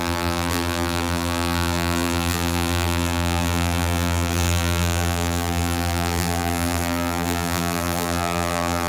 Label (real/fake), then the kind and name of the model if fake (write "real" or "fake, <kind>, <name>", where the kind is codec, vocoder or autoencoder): fake, vocoder, BigVGAN v2